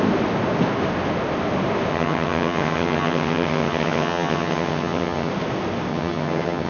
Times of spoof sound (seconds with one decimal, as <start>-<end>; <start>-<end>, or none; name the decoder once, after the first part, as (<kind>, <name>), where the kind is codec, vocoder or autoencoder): 1.9-5.3 (vocoder, HiFi-GAN); 5.9-6.7